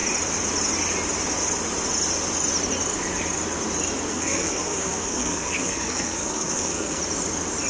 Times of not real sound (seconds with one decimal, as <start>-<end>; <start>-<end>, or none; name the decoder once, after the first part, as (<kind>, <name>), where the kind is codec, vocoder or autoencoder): 4.1-7.0 (codec, SNAC)